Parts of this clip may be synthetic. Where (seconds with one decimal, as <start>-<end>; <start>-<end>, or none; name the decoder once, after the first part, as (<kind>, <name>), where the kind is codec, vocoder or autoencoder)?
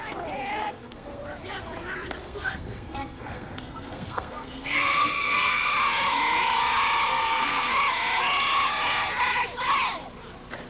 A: 0.6-1.2 (codec, SNAC); 2.2-5.7; 7.1-7.7